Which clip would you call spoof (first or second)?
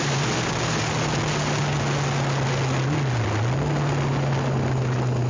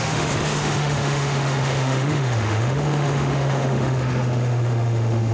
second